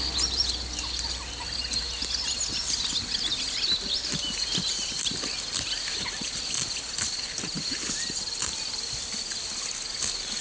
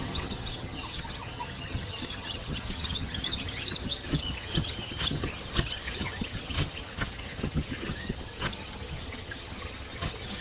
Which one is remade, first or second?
second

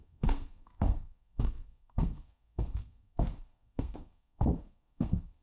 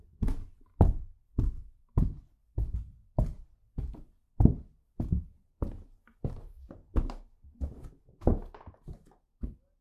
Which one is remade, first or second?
first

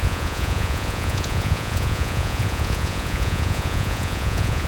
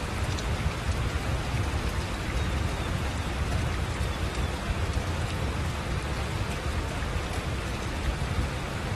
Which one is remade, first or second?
first